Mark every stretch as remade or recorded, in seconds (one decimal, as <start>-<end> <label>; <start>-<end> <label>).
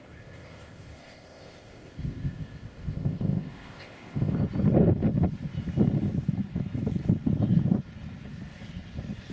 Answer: 0.0-4.3 remade; 4.3-9.3 recorded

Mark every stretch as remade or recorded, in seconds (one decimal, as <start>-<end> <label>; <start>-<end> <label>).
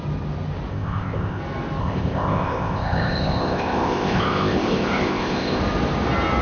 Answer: 0.0-0.7 recorded; 0.7-1.4 remade; 1.4-1.8 recorded; 1.8-5.6 remade; 5.6-6.4 recorded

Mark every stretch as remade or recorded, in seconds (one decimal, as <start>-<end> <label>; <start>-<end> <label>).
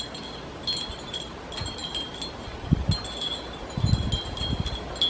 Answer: 0.0-5.1 recorded